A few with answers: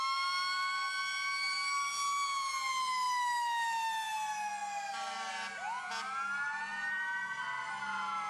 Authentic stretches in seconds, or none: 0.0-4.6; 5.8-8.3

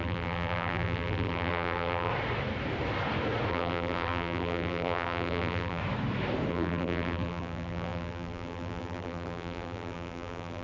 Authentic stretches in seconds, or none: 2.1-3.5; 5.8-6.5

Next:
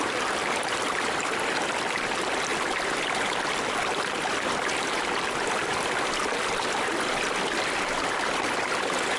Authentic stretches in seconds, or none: none

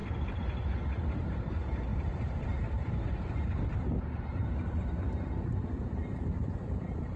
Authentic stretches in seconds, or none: 0.0-1.0